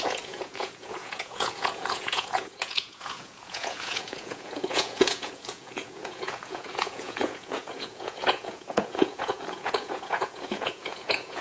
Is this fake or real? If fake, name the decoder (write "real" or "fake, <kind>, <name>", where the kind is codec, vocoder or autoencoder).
fake, vocoder, Vocos